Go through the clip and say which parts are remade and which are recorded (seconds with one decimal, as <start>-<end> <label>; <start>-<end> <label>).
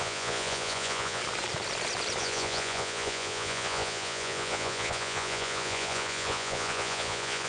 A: 0.0-1.2 remade; 1.2-2.2 recorded; 2.2-7.5 remade